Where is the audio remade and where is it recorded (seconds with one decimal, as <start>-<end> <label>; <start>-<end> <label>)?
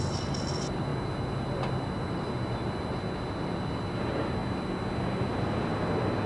0.0-6.3 recorded